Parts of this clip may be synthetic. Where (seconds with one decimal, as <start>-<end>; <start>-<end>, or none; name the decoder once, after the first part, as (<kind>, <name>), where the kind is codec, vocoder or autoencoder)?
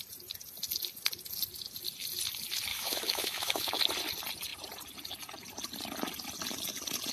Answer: 2.7-3.8 (autoencoder, DAC-VAE)